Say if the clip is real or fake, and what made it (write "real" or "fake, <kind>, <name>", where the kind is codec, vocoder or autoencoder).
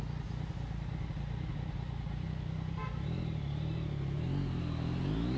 real